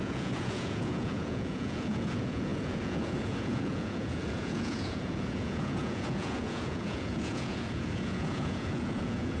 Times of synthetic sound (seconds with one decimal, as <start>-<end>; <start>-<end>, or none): 0.0-9.4